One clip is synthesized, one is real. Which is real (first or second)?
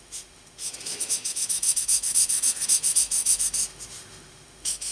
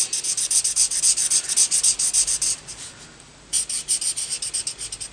second